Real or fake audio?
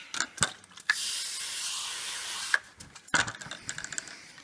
real